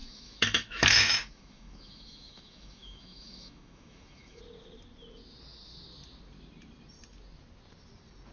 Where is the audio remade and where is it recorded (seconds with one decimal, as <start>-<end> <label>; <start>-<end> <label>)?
0.0-4.4 remade; 4.4-8.3 recorded